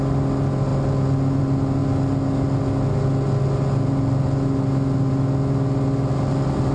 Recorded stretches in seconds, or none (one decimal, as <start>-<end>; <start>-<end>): 0.0-6.7